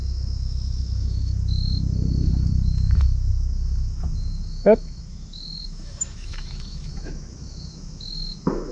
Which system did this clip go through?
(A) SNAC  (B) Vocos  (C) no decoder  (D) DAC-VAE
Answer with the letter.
D